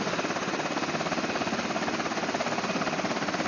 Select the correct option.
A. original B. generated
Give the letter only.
A